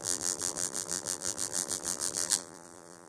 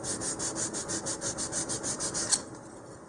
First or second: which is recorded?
second